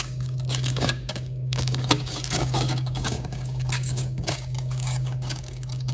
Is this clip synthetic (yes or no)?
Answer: yes